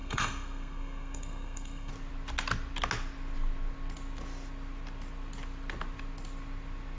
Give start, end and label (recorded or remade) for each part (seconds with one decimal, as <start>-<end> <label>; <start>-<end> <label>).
0.0-1.9 remade; 1.9-7.0 recorded